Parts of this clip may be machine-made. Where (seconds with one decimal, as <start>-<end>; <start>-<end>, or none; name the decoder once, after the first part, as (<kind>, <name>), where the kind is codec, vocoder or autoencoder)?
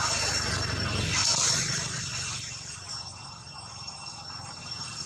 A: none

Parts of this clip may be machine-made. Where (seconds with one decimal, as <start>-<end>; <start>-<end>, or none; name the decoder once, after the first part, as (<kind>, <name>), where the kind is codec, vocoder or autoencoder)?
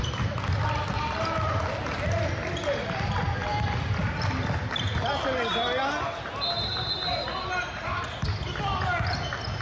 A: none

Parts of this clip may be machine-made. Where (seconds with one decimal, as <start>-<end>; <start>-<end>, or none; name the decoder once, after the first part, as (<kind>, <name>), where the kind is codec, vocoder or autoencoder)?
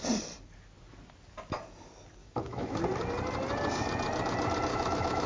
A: 2.2-2.8 (autoencoder, DAC-VAE); 4.7-5.3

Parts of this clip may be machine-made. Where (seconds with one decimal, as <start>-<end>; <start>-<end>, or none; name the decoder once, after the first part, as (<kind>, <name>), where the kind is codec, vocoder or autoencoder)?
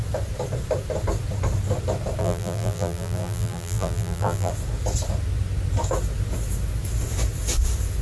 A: 2.2-4.5 (vocoder, BigVGAN v2)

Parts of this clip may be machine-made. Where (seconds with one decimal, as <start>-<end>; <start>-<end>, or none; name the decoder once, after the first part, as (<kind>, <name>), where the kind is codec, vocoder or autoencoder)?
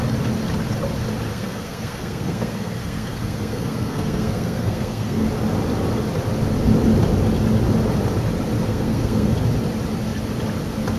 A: 1.3-5.3 (codec, SNAC); 8.7-9.3